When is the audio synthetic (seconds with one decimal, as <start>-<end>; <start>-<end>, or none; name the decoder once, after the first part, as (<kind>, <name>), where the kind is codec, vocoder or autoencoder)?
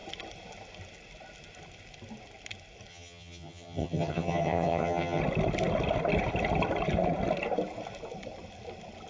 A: 2.9-5.2 (vocoder, HiFi-GAN)